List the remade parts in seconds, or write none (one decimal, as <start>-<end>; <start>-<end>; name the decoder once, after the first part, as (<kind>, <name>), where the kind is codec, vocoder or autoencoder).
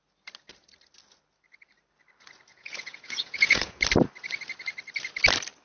2.5-3.8 (vocoder, Vocos)